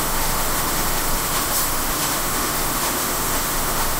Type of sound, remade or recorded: remade